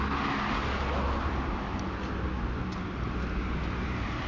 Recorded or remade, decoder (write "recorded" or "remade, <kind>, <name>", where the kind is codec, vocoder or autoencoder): recorded